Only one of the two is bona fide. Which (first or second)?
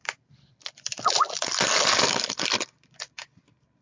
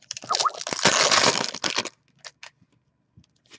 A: second